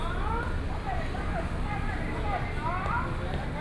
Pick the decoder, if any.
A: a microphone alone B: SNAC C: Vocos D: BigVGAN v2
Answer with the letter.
A